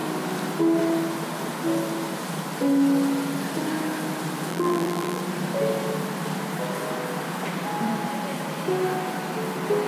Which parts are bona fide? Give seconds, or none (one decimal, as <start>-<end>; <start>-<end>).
0.0-4.5; 5.2-9.9